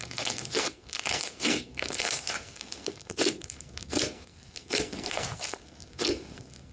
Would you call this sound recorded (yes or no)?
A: no